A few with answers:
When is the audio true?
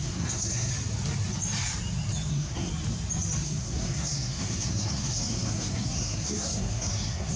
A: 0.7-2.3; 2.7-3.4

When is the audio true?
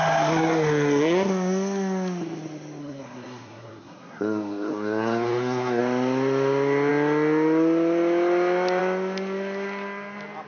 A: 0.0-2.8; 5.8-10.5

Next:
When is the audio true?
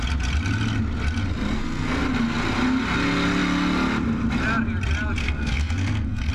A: 0.0-1.5; 2.0-5.2